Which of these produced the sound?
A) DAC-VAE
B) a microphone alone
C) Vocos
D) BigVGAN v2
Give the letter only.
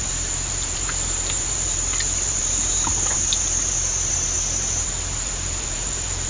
D